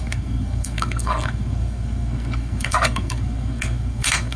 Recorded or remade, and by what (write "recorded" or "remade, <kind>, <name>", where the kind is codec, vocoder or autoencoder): remade, codec, SNAC